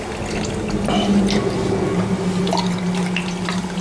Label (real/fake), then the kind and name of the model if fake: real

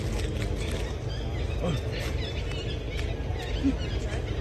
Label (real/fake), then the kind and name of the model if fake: real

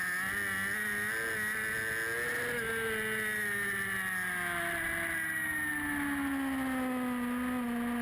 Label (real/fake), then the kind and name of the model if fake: real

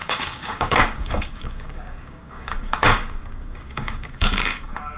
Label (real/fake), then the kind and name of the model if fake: fake, codec, DAC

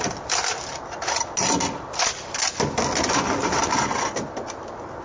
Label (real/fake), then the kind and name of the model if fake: real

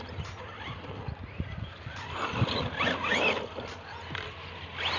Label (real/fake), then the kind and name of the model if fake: real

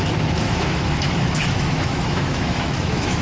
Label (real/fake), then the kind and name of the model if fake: fake, autoencoder, DAC-VAE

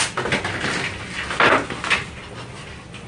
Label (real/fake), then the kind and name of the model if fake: real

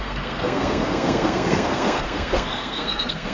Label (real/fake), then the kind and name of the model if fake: fake, codec, SNAC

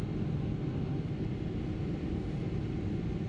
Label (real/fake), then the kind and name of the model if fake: real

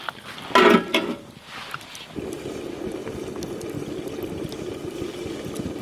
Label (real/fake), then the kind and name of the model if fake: real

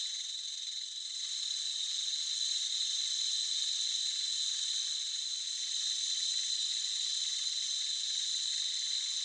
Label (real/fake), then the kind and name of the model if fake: fake, vocoder, Vocos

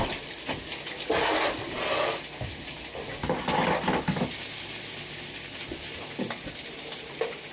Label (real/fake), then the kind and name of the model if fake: real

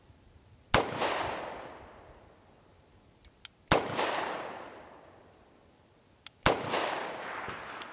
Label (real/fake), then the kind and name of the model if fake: real